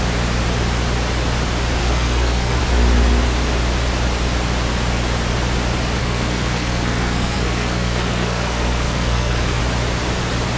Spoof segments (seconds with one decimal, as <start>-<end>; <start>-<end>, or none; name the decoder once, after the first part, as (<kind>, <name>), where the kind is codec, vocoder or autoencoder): 1.8-2.6 (codec, SNAC); 6.0-9.6

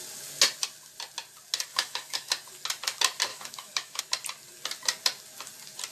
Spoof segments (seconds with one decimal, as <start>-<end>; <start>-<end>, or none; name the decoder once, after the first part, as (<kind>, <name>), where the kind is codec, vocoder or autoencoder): 1.7-2.3 (autoencoder, DAC-VAE); 3.3-4.0

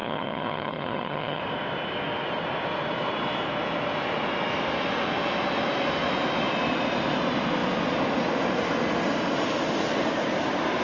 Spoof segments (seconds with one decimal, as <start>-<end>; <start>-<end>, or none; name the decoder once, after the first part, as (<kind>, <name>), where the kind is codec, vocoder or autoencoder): 0.0-1.4 (vocoder, HiFi-GAN)

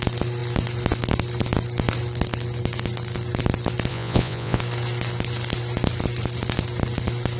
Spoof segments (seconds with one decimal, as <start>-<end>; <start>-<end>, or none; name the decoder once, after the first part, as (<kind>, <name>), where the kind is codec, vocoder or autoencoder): 3.9-4.6 (vocoder, Vocos)